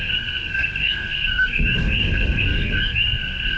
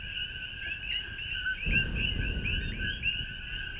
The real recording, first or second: second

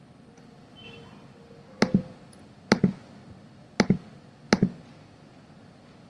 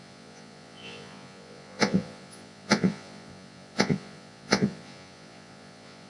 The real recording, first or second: first